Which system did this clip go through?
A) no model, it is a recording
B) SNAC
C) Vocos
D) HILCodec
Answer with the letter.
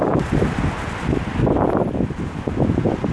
A